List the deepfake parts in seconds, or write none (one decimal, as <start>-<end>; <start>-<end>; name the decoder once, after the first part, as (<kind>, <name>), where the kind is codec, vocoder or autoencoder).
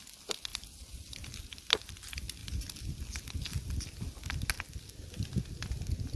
0.5-2.0 (vocoder, BigVGAN v2)